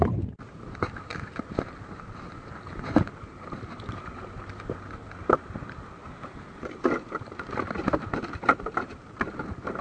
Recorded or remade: remade